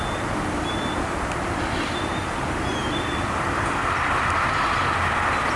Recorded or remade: remade